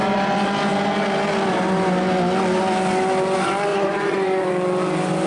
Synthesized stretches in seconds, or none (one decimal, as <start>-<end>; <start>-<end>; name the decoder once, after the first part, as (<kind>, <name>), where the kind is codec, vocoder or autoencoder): 3.7-4.5 (vocoder, Vocos)